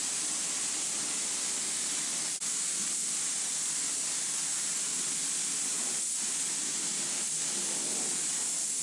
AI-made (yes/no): no